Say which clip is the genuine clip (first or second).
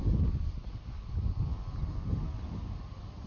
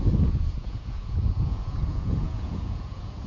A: first